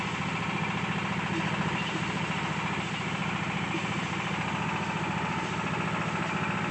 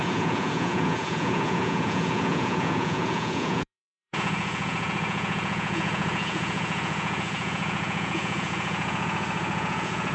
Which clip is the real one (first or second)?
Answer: first